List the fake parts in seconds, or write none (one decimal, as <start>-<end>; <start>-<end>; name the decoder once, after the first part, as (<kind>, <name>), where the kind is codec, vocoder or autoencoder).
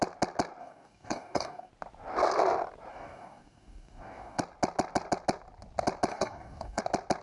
0.6-1.7 (codec, DAC); 2.9-4.4; 6.1-6.8